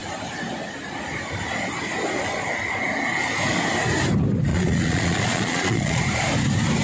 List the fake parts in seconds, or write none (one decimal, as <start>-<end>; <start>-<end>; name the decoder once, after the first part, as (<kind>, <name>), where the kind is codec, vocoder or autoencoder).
4.5-6.0 (vocoder, Vocos)